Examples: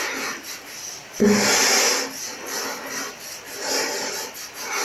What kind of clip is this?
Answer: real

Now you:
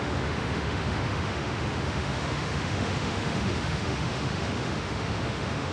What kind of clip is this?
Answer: fake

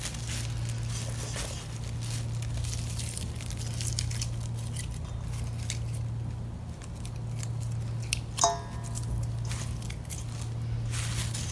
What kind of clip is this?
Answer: real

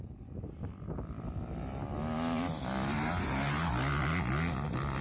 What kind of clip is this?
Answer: real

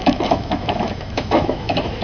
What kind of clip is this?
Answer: fake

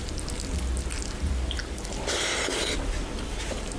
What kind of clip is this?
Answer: real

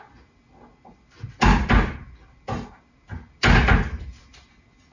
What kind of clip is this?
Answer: real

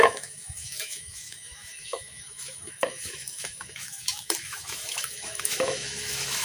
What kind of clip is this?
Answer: fake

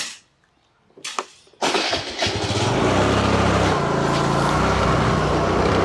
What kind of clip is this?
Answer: real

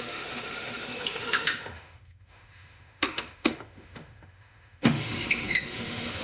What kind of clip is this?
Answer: fake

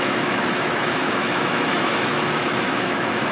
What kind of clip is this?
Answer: fake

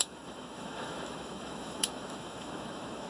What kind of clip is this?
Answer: fake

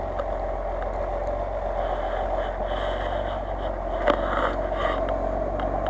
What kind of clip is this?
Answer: real